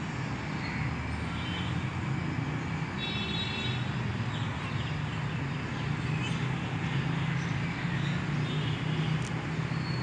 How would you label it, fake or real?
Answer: real